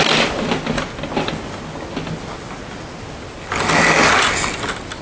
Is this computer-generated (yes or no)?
no